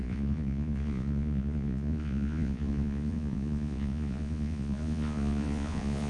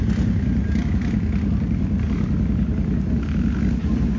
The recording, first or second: second